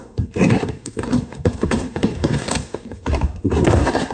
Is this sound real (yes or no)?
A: no